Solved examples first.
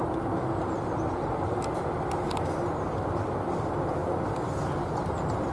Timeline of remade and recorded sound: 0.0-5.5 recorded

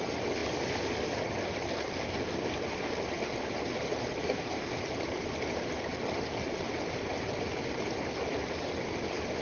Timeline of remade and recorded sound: 0.0-4.2 recorded; 4.2-4.7 remade; 4.7-9.4 recorded

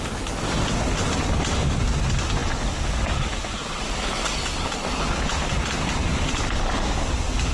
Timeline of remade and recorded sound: 0.0-6.1 recorded; 6.1-7.0 remade; 7.0-7.5 recorded

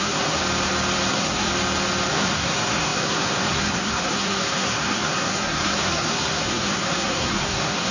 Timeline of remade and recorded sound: 0.0-0.4 remade; 0.4-1.1 recorded; 1.1-1.5 remade; 1.5-2.1 recorded; 2.1-7.9 remade

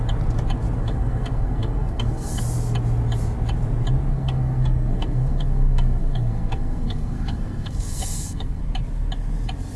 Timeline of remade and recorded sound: 0.0-0.8 recorded; 0.8-2.4 remade; 2.4-4.1 recorded; 4.1-8.6 remade; 8.6-9.8 recorded

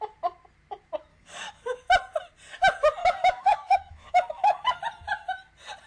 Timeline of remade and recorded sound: 0.0-1.1 recorded; 1.1-1.8 remade; 1.8-3.0 recorded; 3.0-4.8 remade; 4.8-5.9 recorded